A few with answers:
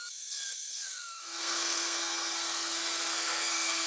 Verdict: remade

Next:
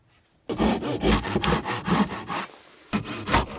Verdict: recorded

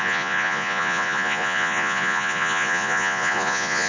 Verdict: remade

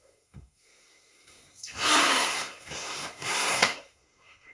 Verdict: remade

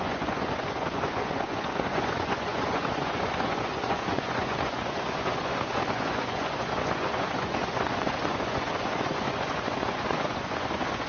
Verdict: remade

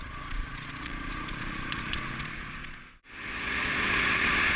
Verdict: remade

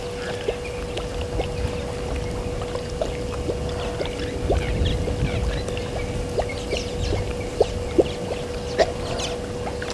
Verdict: recorded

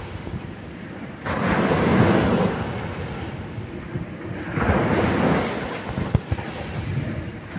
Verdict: recorded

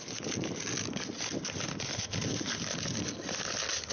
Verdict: recorded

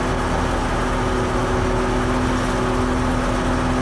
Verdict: recorded